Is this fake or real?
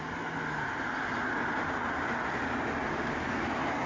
real